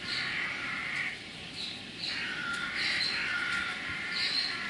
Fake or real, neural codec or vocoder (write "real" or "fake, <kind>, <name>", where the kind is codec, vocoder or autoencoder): fake, vocoder, BigVGAN v2